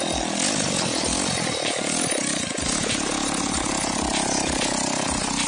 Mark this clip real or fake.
real